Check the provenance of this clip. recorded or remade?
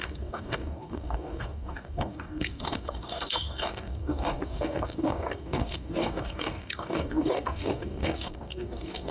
remade